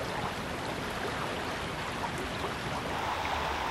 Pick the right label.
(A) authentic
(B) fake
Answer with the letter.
A